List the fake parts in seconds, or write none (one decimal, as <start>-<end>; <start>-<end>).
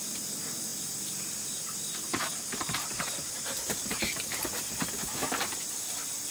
0.0-4.1; 4.8-6.3